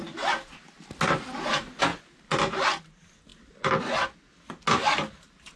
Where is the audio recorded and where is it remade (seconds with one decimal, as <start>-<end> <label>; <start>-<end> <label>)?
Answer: 0.0-5.6 recorded